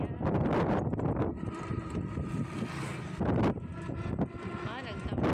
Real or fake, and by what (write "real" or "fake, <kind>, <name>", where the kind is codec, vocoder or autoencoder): real